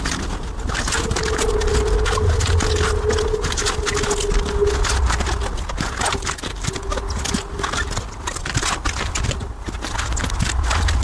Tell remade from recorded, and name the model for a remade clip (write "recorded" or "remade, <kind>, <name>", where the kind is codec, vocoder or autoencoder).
recorded